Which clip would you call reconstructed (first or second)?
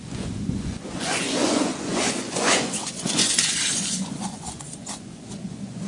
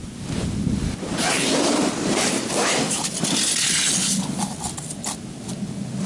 first